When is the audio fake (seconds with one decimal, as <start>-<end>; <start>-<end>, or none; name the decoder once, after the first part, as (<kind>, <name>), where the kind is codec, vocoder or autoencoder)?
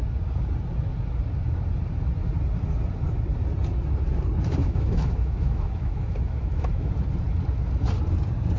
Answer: 4.6-6.9 (autoencoder, DAC-VAE)